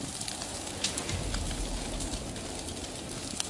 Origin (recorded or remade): recorded